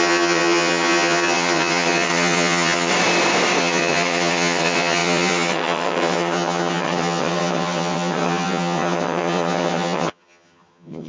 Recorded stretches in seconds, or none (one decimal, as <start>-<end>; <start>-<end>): 2.9-3.6